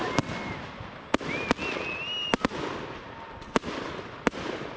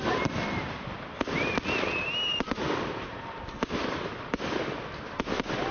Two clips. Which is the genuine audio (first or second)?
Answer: first